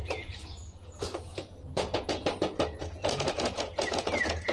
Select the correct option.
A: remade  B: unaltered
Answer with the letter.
A